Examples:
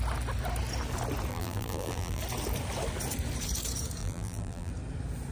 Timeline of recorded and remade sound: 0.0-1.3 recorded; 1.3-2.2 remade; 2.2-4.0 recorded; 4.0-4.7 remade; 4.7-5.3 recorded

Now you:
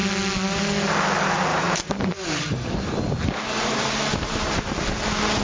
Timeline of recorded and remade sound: 0.0-1.5 recorded; 1.5-4.7 remade; 4.7-5.4 recorded

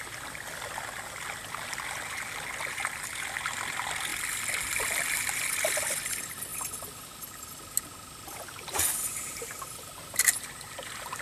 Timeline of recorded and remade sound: 0.0-11.2 recorded

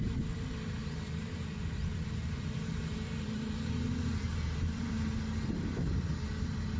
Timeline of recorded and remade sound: 0.0-0.8 recorded; 0.8-4.9 remade; 4.9-6.8 recorded

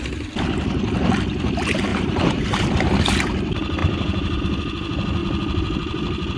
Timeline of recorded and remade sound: 0.0-1.9 recorded; 1.9-2.7 remade; 2.7-3.8 recorded; 3.8-4.4 remade; 4.4-6.4 recorded

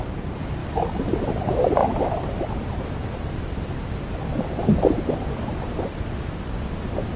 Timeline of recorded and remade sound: 0.0-7.2 remade

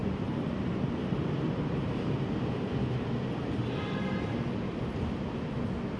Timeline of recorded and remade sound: 0.0-0.8 remade; 0.8-6.0 recorded